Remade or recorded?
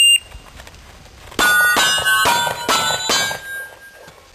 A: recorded